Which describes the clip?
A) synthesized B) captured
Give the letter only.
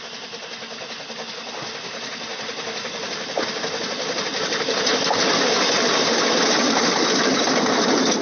B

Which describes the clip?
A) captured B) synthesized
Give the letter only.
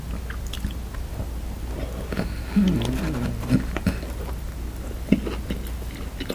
A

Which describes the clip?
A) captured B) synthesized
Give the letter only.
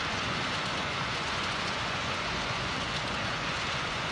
B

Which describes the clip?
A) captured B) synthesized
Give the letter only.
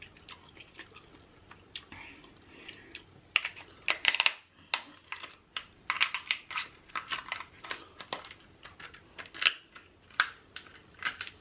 A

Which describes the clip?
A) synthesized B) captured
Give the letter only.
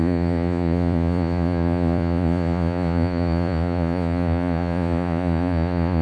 A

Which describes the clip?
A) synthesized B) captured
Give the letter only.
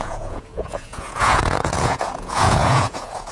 A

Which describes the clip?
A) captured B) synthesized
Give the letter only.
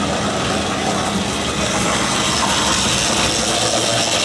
A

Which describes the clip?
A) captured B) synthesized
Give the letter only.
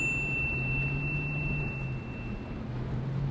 A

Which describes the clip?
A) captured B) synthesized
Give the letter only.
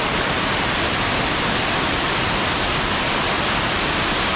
A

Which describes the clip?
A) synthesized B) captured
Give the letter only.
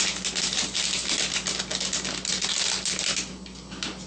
B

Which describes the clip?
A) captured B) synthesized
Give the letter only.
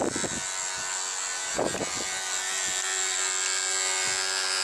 A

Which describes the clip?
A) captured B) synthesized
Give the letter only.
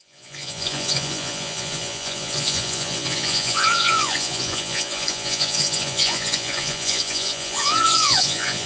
B